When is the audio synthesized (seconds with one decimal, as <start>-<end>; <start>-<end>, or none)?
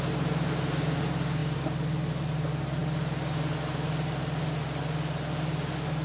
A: none